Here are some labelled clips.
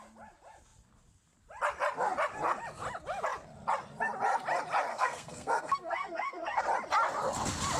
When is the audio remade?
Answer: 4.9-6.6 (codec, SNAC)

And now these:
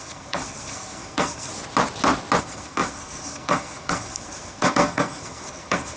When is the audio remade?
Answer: 0.0-1.5 (codec, SNAC); 2.4-6.0

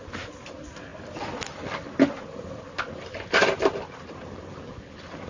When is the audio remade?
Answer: none

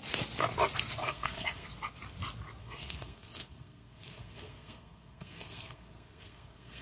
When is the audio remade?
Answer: 1.0-1.7 (codec, SNAC); 2.6-6.8

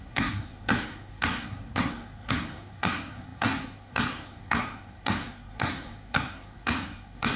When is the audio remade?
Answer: 0.0-7.4 (codec, SNAC)

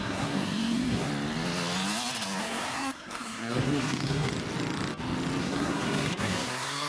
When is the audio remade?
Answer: 0.0-1.1 (codec, SNAC); 2.4-4.3; 5.4-6.9

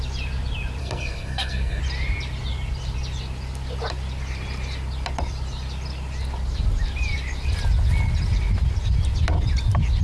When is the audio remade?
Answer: 0.8-1.8 (codec, SNAC)

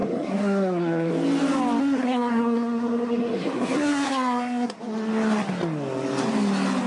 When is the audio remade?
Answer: 0.0-1.1 (codec, SNAC); 1.8-4.8